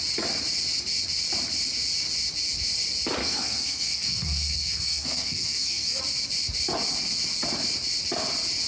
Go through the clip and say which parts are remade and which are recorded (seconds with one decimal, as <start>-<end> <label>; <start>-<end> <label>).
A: 0.0-3.2 recorded; 3.2-6.0 remade; 6.0-8.7 recorded